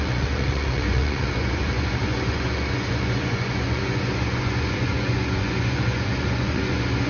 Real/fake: fake